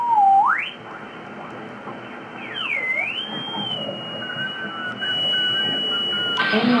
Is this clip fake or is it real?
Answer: real